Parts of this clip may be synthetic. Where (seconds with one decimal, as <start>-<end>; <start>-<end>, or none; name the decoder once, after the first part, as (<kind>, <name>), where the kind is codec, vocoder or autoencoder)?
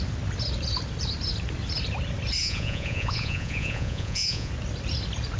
2.4-4.5 (vocoder, Vocos)